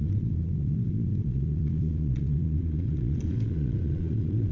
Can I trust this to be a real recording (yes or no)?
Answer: no